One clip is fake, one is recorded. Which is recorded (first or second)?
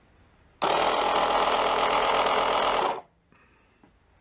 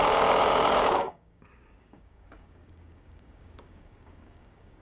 first